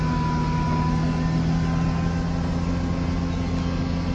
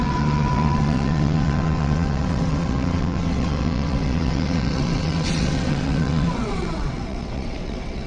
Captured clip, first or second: first